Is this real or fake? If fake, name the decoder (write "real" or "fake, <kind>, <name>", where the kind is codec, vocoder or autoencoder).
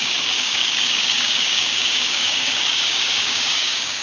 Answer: fake, codec, DAC